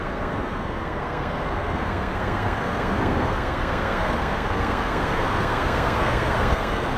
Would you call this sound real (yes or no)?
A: no